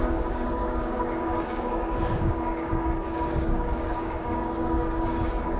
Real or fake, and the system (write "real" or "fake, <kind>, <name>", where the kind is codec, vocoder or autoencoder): fake, codec, DAC